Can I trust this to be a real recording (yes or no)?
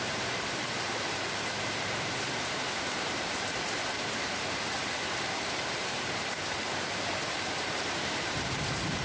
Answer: no